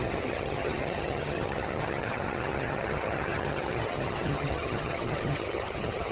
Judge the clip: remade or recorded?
remade